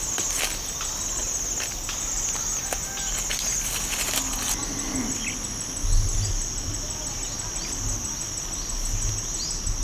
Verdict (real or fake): real